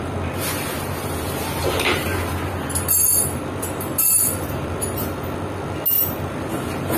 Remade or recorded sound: recorded